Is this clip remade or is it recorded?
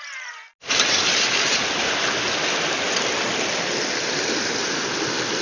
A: recorded